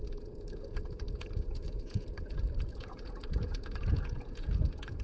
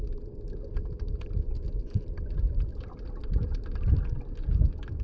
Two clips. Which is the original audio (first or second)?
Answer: second